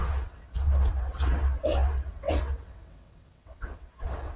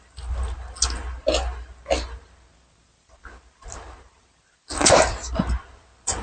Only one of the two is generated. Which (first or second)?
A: first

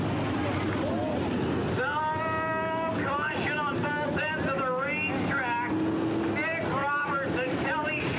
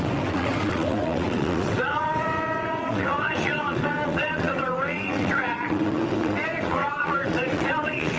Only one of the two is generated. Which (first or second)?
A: second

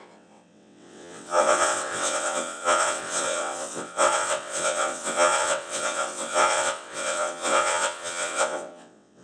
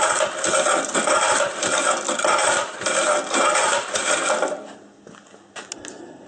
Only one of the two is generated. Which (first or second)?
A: first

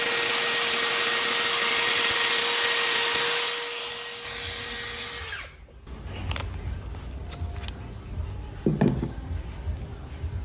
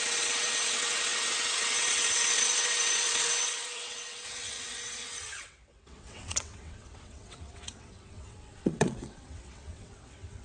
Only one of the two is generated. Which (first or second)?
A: second